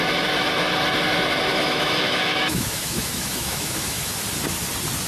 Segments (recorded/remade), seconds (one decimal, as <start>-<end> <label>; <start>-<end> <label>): 0.0-1.5 recorded; 1.5-4.1 remade; 4.1-5.1 recorded